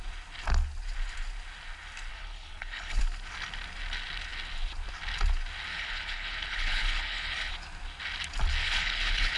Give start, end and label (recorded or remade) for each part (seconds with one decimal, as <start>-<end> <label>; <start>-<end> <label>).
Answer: 0.0-2.1 recorded; 2.1-3.0 remade; 3.0-5.7 recorded; 5.7-7.5 remade; 7.5-8.6 recorded; 8.6-9.4 remade